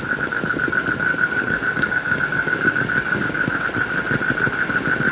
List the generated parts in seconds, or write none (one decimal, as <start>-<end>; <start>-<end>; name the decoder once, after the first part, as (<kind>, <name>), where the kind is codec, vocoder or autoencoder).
1.1-3.6 (codec, DAC)